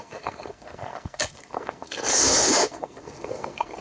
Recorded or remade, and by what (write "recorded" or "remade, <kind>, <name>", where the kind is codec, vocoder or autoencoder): remade, codec, SNAC